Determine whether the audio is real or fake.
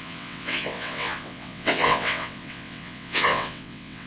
fake